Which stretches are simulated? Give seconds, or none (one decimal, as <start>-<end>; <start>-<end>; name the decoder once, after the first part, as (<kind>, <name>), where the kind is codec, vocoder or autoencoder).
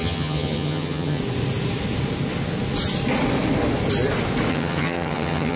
0.0-1.2 (vocoder, HiFi-GAN); 4.5-5.6